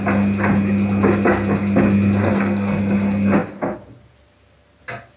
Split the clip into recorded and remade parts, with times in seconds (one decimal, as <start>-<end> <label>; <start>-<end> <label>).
0.0-2.2 recorded; 2.2-2.8 remade; 2.8-5.2 recorded